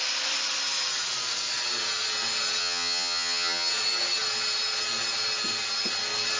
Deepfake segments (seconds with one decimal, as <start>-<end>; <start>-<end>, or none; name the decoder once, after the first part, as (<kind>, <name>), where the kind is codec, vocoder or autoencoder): 2.6-3.7 (vocoder, HiFi-GAN)